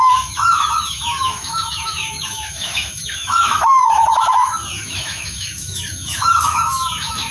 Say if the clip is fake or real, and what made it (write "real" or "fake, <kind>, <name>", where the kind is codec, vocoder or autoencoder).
fake, autoencoder, DAC-VAE